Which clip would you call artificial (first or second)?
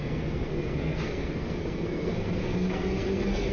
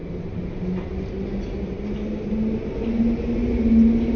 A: first